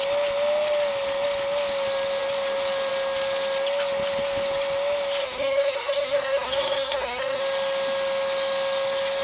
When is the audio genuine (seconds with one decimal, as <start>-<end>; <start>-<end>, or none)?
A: 0.0-5.2; 7.4-9.2